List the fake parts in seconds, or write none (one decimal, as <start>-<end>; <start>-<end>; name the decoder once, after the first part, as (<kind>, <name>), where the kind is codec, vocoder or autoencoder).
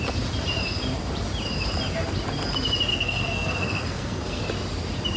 2.9-4.4 (codec, SNAC)